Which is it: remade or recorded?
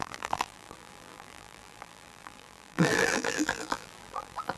remade